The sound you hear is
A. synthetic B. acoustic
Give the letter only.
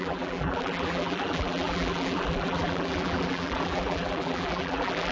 A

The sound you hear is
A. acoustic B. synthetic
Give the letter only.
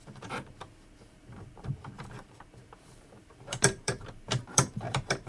B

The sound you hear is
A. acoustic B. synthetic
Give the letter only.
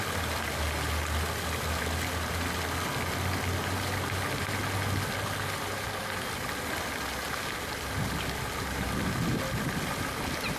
A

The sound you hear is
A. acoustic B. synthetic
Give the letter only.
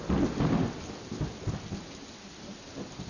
A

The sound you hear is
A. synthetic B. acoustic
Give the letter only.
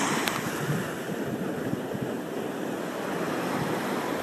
B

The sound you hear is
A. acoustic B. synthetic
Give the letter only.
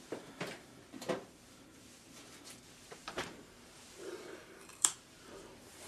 B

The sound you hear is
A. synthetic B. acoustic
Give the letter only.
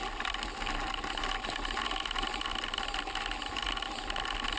B